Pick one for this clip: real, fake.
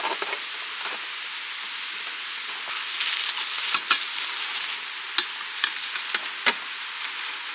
real